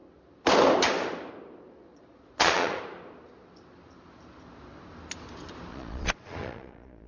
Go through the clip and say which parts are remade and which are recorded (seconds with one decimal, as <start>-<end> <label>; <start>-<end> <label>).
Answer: 0.0-1.9 recorded; 1.9-2.8 remade; 2.8-5.7 recorded; 5.7-7.1 remade